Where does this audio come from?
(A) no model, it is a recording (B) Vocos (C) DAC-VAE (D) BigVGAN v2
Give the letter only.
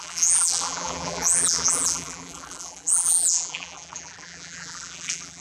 D